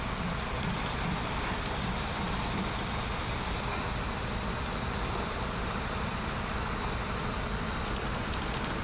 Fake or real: fake